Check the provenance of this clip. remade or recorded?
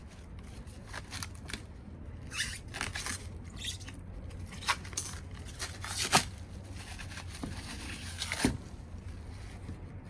recorded